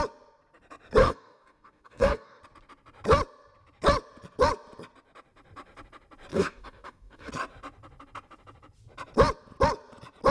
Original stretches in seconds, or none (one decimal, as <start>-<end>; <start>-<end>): 0.0-1.0; 2.4-6.3; 7.3-10.3